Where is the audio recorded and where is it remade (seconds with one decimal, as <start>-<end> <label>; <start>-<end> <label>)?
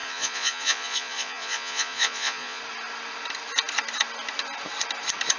0.0-2.6 remade; 2.6-5.4 recorded